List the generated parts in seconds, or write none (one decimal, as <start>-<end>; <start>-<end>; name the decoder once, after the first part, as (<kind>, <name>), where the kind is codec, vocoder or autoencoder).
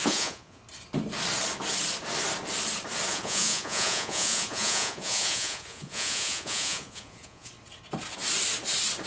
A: 0.0-0.6 (vocoder, Vocos); 3.1-7.5